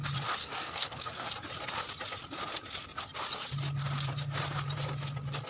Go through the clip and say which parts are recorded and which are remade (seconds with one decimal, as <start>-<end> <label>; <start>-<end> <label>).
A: 0.0-0.4 recorded; 0.4-1.3 remade; 1.3-5.5 recorded